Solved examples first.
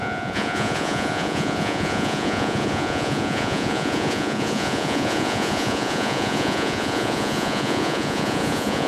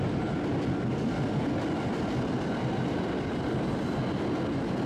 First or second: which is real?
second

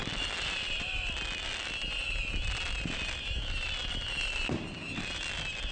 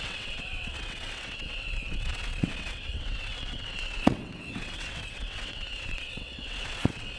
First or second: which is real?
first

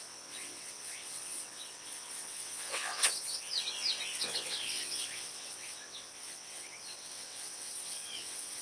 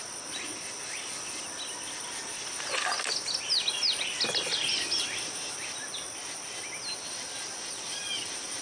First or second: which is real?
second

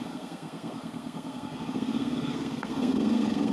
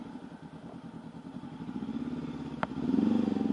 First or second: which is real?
second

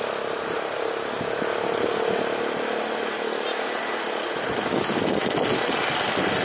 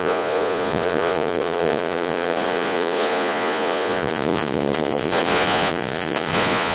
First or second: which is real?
first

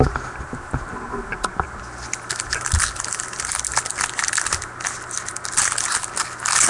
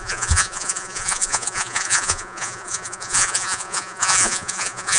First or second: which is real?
first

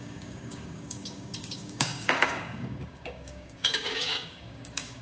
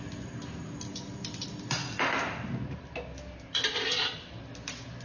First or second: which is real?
second